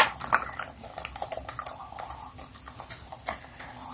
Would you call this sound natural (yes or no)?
yes